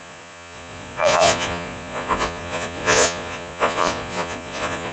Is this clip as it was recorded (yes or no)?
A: no